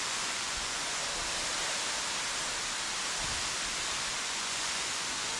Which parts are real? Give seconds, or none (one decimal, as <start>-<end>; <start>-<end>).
1.0-4.2